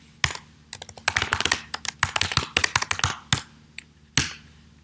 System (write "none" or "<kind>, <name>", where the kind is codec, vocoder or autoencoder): none